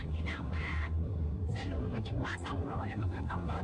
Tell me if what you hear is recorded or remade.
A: remade